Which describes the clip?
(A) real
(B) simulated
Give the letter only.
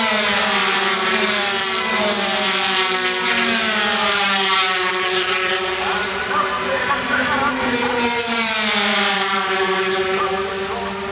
B